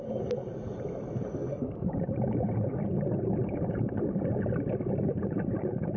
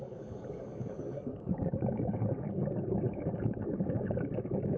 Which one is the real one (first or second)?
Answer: first